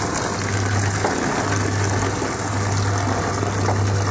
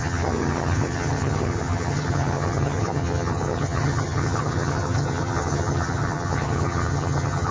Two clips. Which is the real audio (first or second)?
first